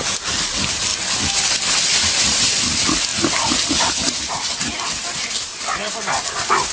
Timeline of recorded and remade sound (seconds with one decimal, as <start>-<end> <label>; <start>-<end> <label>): 0.0-6.7 recorded